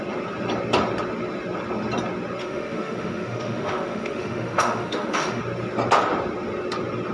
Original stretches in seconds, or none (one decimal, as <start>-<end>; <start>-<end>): 0.0-2.4; 5.4-7.1